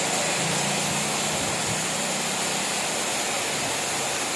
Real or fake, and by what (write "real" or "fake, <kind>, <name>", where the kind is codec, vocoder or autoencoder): real